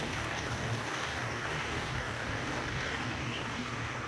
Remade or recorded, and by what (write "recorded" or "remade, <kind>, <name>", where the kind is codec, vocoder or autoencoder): remade, codec, DAC